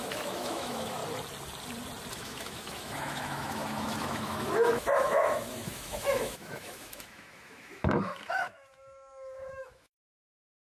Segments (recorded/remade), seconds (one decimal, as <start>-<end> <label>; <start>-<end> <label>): 0.0-1.0 remade; 1.0-2.1 recorded; 2.1-10.8 remade